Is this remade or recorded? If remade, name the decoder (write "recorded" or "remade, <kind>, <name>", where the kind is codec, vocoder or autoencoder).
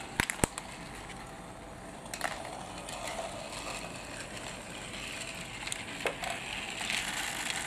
recorded